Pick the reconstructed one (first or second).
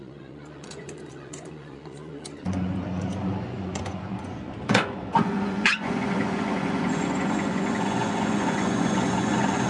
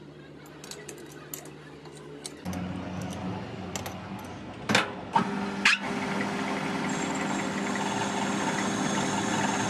first